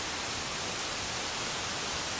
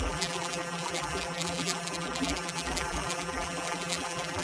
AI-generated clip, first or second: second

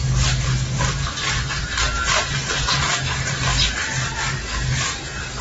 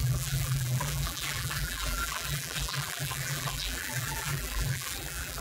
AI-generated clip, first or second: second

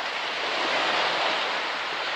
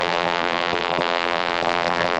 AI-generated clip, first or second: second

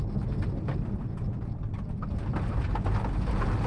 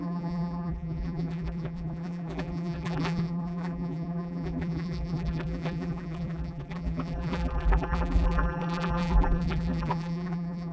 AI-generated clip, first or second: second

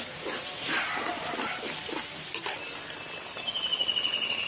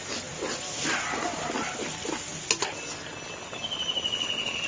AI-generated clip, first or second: first